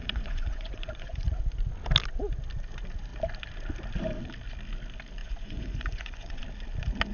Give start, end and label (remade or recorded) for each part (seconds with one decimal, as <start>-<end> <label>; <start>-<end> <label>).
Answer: 0.0-1.4 remade; 1.4-5.2 recorded; 5.2-6.4 remade; 6.4-7.1 recorded